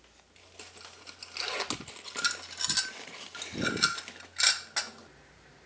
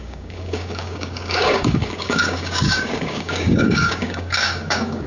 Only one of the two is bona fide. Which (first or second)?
first